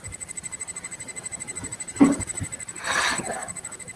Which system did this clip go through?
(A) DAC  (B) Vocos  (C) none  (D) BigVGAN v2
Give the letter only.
D